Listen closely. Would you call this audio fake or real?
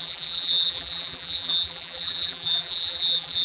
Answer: fake